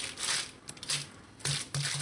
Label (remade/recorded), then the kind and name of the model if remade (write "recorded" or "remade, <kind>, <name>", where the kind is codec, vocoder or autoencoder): recorded